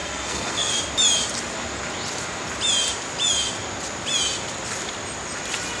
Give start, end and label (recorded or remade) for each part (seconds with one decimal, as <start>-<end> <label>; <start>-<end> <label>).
0.0-0.7 remade; 0.7-5.8 recorded